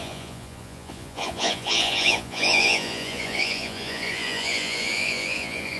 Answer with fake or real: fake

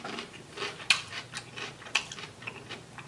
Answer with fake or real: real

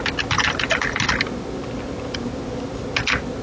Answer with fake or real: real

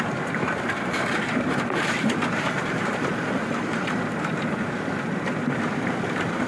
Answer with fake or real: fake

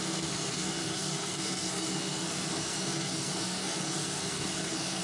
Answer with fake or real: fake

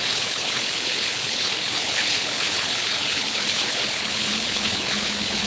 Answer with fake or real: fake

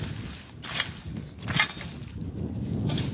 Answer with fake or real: real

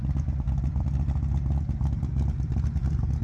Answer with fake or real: real